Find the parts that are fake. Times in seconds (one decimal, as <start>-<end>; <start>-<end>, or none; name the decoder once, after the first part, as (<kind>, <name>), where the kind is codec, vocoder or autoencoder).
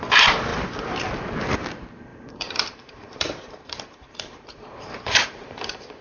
2.1-6.0 (vocoder, BigVGAN v2)